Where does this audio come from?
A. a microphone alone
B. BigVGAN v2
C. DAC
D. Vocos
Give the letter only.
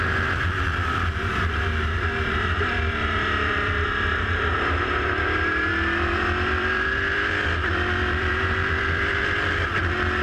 B